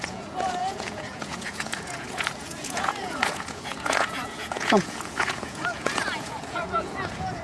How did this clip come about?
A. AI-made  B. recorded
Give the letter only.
A